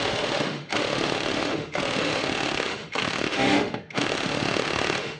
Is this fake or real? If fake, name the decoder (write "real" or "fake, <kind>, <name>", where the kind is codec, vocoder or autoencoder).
fake, autoencoder, DAC-VAE